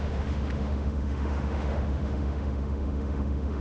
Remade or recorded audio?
remade